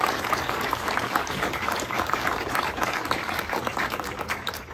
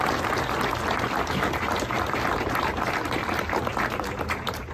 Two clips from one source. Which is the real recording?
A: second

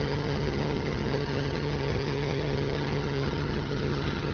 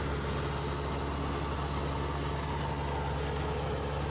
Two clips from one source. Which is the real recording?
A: second